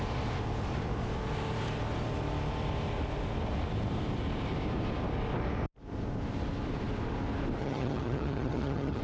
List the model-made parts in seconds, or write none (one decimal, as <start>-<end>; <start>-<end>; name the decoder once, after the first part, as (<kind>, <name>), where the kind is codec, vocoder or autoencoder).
7.6-9.0 (vocoder, HiFi-GAN)